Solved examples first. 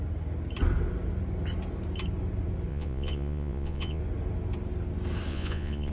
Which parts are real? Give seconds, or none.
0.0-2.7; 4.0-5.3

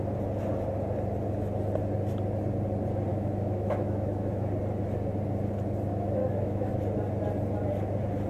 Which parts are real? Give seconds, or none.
0.0-3.1; 4.5-6.2; 6.7-8.3